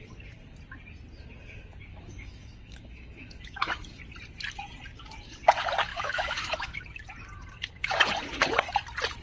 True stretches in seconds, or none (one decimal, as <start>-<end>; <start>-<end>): 0.0-1.9; 4.0-5.9; 6.8-9.2